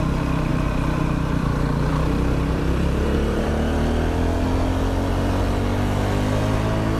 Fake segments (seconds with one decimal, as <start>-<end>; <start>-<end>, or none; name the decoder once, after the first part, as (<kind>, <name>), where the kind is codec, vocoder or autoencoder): 0.5-3.5 (vocoder, BigVGAN v2)